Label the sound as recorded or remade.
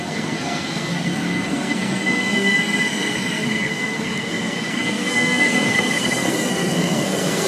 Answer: remade